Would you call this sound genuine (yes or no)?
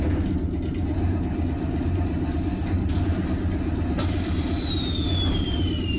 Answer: yes